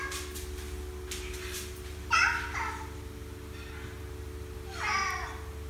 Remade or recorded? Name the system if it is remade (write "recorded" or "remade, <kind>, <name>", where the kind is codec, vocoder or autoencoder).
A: recorded